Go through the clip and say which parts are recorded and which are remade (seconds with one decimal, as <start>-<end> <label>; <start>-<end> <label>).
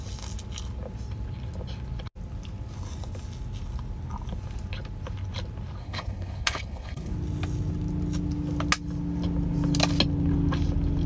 0.0-5.8 recorded; 5.8-7.1 remade; 7.1-11.1 recorded